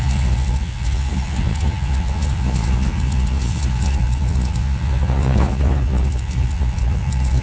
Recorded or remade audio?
remade